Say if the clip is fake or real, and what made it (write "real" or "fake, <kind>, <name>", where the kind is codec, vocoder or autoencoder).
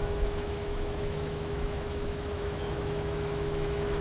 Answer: fake, autoencoder, DAC-VAE